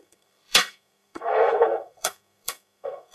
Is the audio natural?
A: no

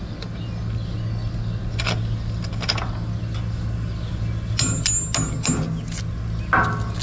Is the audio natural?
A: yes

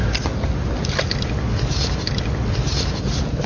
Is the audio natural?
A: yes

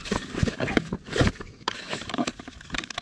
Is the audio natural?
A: no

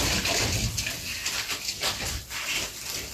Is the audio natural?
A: yes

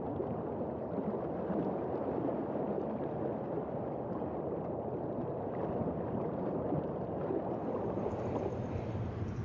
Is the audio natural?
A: yes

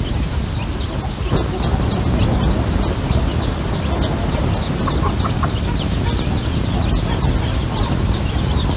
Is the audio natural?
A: yes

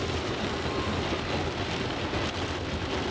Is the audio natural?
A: yes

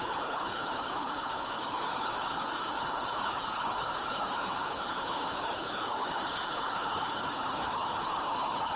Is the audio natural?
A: no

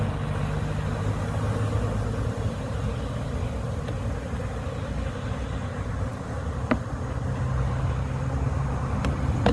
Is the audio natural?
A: yes